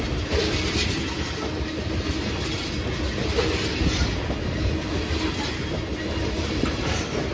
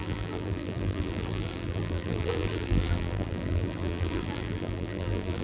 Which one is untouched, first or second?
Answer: first